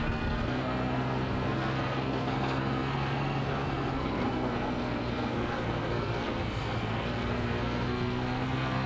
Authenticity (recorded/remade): remade